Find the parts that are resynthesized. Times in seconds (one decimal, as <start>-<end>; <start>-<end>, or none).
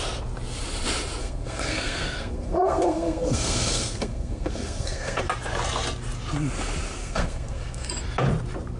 1.2-5.2; 7.0-7.9